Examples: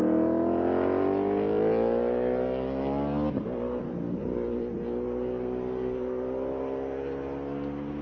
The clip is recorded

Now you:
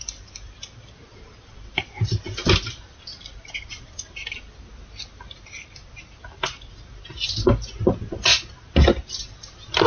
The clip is recorded